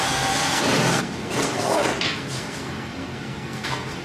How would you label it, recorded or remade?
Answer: remade